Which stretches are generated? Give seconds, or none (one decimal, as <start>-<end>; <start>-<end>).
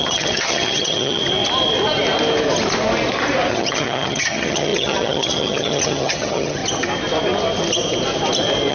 0.0-1.2; 3.5-6.6